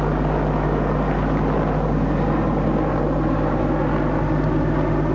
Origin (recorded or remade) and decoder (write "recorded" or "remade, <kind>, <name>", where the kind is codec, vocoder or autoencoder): recorded